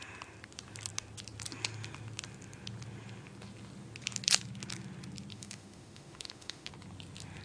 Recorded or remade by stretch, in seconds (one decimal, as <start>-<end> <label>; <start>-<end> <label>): 0.0-5.3 recorded; 5.3-6.7 remade; 6.7-7.4 recorded